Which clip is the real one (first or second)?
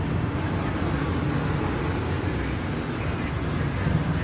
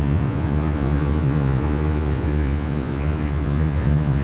first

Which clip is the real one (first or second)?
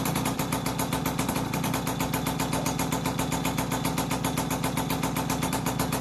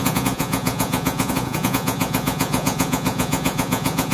first